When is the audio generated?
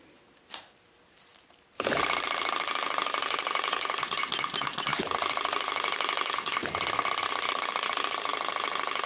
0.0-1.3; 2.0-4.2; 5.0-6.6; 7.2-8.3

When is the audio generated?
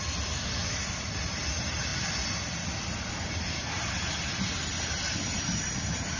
none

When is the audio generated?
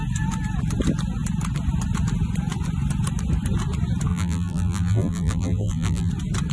4.1-6.1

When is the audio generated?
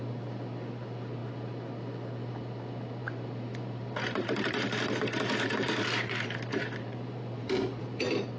3.0-7.8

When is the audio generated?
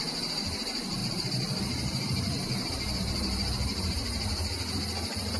1.0-2.4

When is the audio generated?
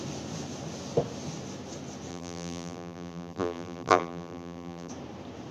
2.1-4.9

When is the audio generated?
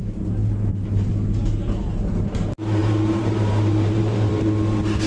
0.4-1.1; 2.8-5.1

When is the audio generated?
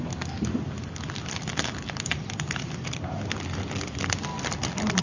none